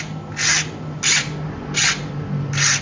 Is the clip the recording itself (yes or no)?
yes